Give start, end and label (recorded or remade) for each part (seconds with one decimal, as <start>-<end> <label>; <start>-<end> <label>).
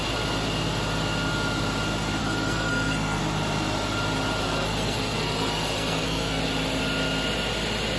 0.0-2.2 recorded; 2.2-3.2 remade; 3.2-4.4 recorded; 4.4-6.4 remade; 6.4-8.0 recorded